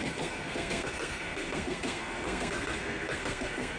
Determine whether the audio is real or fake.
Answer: fake